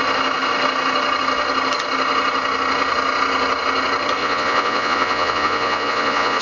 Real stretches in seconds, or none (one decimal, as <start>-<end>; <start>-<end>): 0.0-4.2

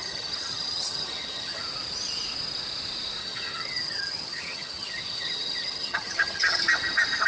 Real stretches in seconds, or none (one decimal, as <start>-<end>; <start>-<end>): 1.6-3.2; 6.6-7.3

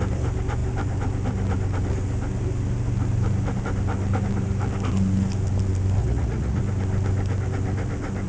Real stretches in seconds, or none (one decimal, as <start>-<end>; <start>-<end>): 0.0-6.0; 6.6-8.3

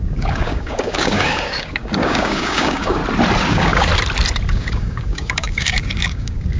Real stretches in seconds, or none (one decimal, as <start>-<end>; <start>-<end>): 3.0-3.5; 3.9-4.5

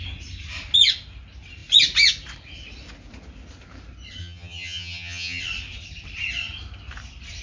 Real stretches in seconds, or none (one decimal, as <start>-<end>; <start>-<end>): 0.0-4.2; 5.4-7.4

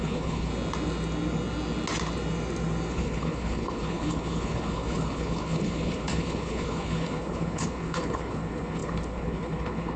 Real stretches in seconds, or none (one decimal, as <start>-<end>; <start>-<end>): 0.5-2.9

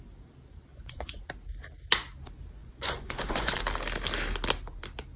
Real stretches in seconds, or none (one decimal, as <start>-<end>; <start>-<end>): 0.0-0.7; 1.2-2.6; 3.6-5.2